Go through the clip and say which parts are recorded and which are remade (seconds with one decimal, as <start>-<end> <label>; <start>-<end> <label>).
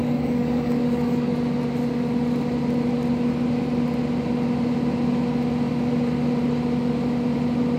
0.0-1.3 remade; 1.3-7.8 recorded